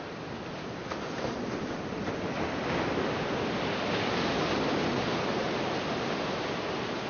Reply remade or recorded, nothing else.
recorded